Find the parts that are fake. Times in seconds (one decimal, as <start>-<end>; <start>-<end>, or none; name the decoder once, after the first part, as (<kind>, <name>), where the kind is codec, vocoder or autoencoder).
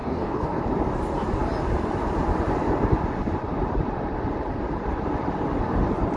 0.0-0.6 (codec, DAC)